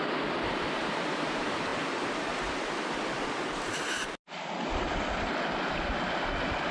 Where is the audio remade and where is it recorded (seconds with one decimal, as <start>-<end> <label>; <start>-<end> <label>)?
0.0-6.7 recorded